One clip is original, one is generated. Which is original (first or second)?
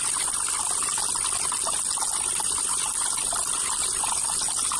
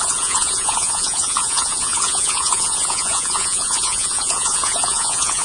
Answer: first